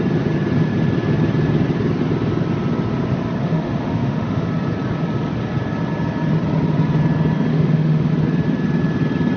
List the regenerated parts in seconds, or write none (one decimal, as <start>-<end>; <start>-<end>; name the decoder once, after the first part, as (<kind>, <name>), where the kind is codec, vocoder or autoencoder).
3.4-4.5 (autoencoder, DAC-VAE); 7.5-8.1